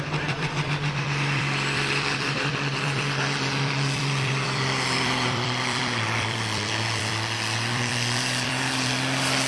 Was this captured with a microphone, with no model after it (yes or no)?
no